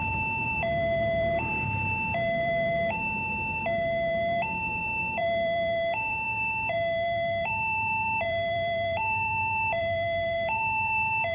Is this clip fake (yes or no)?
yes